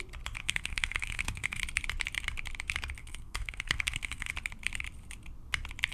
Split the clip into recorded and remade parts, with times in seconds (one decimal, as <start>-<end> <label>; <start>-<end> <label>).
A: 0.0-0.4 recorded; 0.4-1.6 remade; 1.6-3.0 recorded; 3.0-4.3 remade; 4.3-5.9 recorded